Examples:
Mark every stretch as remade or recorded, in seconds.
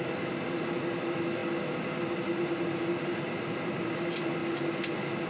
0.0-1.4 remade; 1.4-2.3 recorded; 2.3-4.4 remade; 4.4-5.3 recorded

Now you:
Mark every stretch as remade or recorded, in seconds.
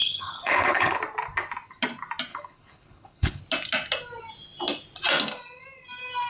0.0-1.0 remade; 1.0-2.3 recorded; 2.3-3.4 remade; 3.4-6.3 recorded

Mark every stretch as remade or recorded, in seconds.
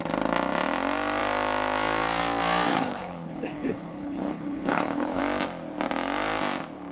0.0-2.7 recorded; 2.7-5.2 remade; 5.2-6.9 recorded